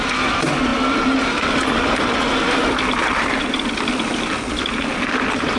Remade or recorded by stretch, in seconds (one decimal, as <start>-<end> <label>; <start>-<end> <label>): 0.0-5.6 recorded

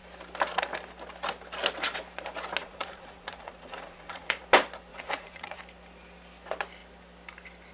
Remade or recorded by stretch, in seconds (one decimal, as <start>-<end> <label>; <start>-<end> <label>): 0.0-2.6 recorded; 2.6-4.4 remade; 4.4-4.9 recorded; 4.9-5.6 remade; 5.6-7.7 recorded

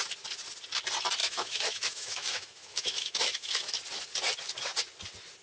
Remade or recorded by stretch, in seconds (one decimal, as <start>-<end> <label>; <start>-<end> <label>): 0.0-1.2 recorded; 1.2-3.7 remade; 3.7-5.4 recorded

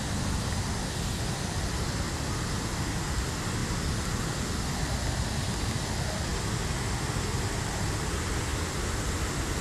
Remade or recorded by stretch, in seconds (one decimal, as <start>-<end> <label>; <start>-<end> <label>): 0.0-9.6 recorded

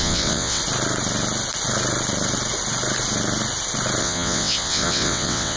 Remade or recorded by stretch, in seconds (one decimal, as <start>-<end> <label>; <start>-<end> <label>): 0.0-0.6 remade; 0.6-4.0 recorded; 4.0-5.6 remade

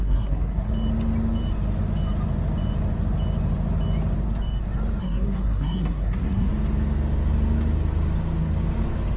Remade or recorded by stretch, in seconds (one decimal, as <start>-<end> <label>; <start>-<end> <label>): 0.0-0.7 remade; 0.7-5.0 recorded; 5.0-6.5 remade; 6.5-9.2 recorded